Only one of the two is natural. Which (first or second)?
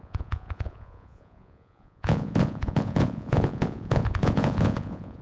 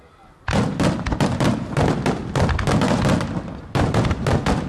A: second